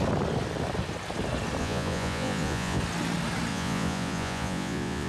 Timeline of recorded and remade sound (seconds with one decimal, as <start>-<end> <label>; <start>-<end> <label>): 0.0-1.6 recorded; 1.6-2.8 remade; 2.8-3.5 recorded; 3.5-5.1 remade